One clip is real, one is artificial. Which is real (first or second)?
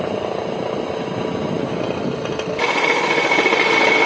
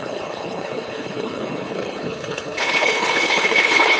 first